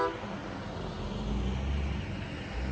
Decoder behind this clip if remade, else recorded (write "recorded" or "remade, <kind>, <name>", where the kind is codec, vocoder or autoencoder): recorded